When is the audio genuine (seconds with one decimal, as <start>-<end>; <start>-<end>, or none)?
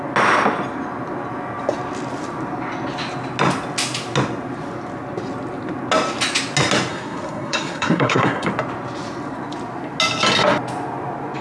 0.0-6.9; 8.5-11.4